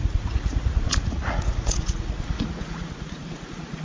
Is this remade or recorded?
remade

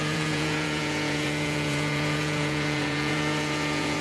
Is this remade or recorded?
remade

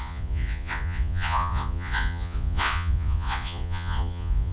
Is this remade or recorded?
remade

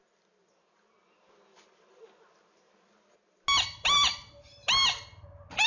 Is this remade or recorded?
recorded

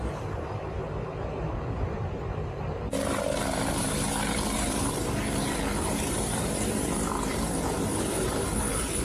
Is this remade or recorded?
remade